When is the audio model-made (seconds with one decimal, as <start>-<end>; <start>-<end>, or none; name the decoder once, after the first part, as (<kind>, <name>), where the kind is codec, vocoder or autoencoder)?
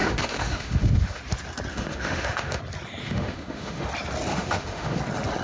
0.0-1.2 (autoencoder, DAC-VAE); 1.7-2.6; 3.0-3.9; 4.3-5.0